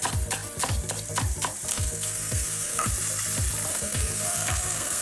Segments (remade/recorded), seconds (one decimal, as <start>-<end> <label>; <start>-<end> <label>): 0.0-1.7 recorded; 1.7-2.9 remade; 2.9-3.7 recorded; 3.7-5.0 remade